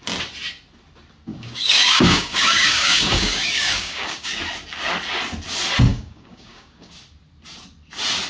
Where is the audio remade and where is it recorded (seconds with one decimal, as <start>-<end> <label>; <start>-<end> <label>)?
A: 0.0-1.3 recorded; 1.3-4.4 remade; 4.4-5.9 recorded; 5.9-6.9 remade; 6.9-8.3 recorded